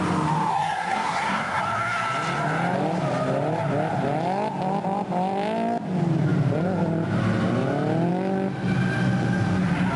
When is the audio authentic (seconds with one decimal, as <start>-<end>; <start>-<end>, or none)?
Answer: 0.0-0.5; 1.6-10.0